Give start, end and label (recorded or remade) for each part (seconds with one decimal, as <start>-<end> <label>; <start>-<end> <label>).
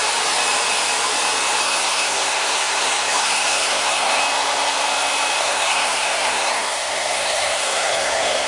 0.0-1.6 recorded; 1.6-4.2 remade; 4.2-5.4 recorded; 5.4-8.5 remade